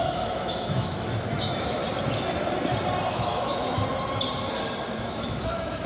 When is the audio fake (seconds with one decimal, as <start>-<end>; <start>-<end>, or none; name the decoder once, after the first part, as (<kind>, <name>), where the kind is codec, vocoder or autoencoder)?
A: 0.0-1.8 (autoencoder, DAC-VAE); 3.1-3.8; 5.0-5.9